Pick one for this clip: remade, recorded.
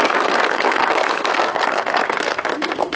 remade